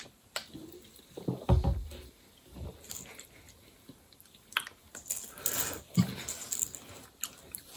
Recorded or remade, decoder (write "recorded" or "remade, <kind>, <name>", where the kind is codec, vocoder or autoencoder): recorded